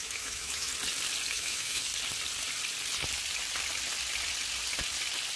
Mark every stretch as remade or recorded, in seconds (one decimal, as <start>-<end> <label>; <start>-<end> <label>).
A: 0.0-0.7 remade; 0.7-1.3 recorded; 1.3-1.9 remade; 1.9-5.4 recorded